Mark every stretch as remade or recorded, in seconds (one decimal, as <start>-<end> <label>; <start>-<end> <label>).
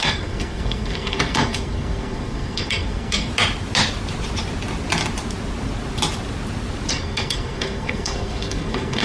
0.0-3.3 remade; 3.3-6.9 recorded; 6.9-9.0 remade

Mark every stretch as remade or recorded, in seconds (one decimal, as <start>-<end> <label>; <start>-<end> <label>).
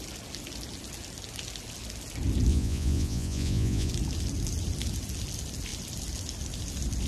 0.0-2.5 recorded; 2.5-3.9 remade; 3.9-7.1 recorded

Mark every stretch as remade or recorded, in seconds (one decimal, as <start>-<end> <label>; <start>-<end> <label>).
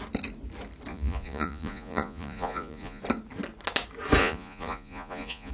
0.0-0.9 recorded; 0.9-3.0 remade; 3.0-4.2 recorded; 4.2-5.5 remade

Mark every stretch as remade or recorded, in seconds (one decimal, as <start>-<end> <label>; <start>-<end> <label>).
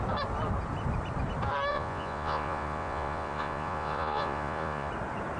0.0-1.7 recorded; 1.7-4.9 remade; 4.9-5.4 recorded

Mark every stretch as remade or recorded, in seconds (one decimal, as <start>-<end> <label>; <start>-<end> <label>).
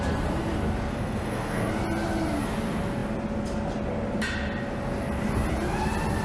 0.0-0.9 recorded; 0.9-1.7 remade; 1.7-6.2 recorded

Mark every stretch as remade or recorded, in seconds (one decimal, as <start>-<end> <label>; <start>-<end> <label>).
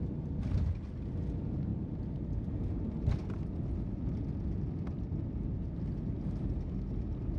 0.0-7.4 recorded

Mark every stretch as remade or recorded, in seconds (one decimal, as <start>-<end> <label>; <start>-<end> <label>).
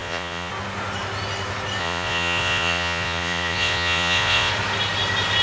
0.0-0.5 remade; 0.5-1.8 recorded; 1.8-4.5 remade; 4.5-5.4 recorded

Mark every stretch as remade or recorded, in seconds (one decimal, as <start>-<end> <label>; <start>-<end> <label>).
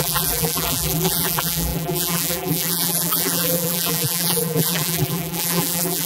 0.0-6.1 remade